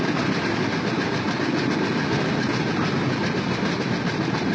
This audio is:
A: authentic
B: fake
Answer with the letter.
A